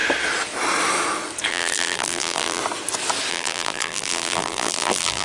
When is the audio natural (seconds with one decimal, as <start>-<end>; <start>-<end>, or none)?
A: 0.0-1.5; 2.6-3.3

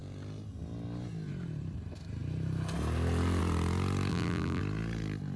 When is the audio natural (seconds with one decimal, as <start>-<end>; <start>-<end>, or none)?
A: 0.0-4.1; 4.6-5.4

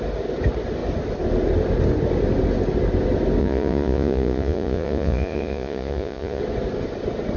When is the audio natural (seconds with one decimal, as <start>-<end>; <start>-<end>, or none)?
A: 0.0-3.4; 6.4-7.4

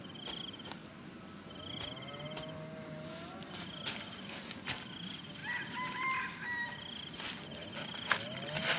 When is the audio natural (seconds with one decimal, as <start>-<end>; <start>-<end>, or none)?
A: 0.0-8.8

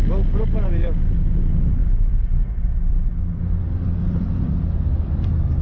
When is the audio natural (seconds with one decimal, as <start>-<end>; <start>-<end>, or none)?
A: 0.0-4.0; 4.5-5.6

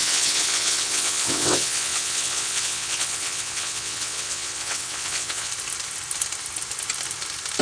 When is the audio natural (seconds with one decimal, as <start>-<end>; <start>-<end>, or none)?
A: 5.5-7.6

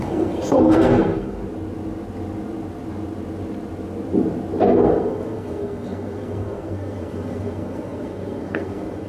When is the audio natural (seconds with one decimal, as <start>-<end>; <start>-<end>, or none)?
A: 1.4-4.6